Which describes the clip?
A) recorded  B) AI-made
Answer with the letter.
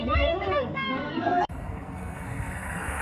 B